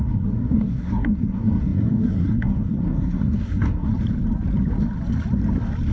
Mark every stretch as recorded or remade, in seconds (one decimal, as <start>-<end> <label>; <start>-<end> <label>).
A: 0.0-3.9 remade; 3.9-5.9 recorded